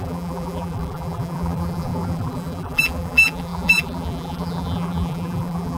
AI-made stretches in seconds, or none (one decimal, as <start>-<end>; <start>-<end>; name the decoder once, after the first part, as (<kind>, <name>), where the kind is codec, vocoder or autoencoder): 0.0-5.8 (vocoder, BigVGAN v2)

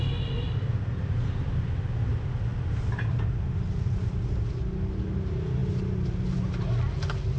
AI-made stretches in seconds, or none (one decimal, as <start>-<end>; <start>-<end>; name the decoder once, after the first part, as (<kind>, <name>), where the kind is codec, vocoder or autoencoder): none

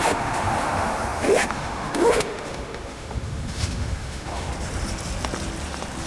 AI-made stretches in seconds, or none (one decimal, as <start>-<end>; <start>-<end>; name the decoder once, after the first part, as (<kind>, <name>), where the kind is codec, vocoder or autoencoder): 0.0-4.5 (autoencoder, DAC-VAE)

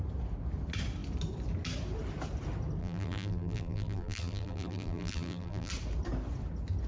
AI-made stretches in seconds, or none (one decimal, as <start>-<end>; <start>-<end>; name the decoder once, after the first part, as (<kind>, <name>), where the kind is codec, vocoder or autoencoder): 2.8-5.7 (vocoder, BigVGAN v2)

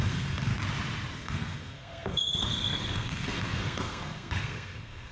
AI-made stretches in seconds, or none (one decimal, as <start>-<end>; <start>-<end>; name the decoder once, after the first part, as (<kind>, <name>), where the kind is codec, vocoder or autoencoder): 0.0-0.5 (codec, SNAC); 1.1-5.1

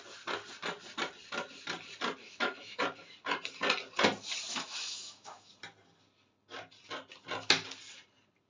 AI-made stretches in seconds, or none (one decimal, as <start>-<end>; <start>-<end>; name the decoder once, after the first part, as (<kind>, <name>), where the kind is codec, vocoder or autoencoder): 2.2-2.8 (autoencoder, DAC-VAE); 4.5-5.5

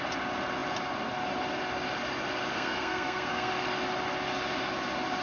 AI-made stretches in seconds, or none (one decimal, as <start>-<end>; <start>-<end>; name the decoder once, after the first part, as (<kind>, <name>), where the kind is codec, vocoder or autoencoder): 2.5-3.5 (codec, SNAC)